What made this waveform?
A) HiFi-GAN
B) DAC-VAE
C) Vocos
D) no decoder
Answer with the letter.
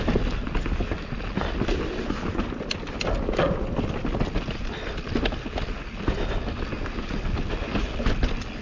D